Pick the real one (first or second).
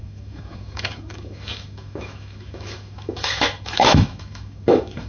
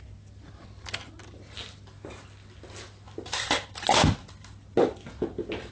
second